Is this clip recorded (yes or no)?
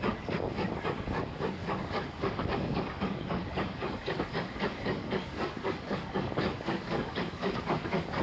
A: no